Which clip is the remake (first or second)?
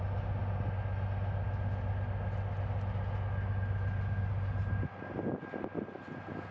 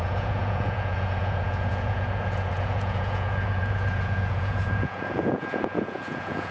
second